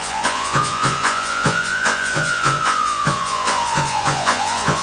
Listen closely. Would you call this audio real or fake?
fake